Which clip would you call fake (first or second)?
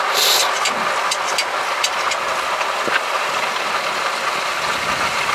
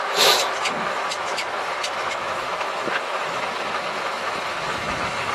second